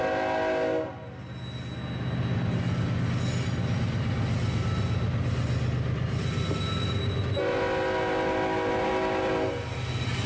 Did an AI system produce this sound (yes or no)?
no